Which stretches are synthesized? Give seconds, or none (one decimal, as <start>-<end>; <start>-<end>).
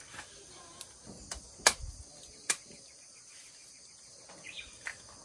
none